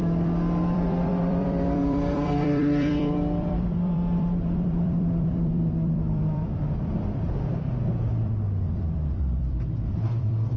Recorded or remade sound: remade